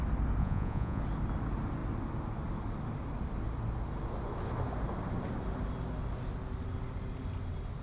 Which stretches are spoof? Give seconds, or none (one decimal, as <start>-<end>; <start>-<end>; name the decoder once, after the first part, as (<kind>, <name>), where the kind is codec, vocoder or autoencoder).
0.4-1.0 (vocoder, Vocos)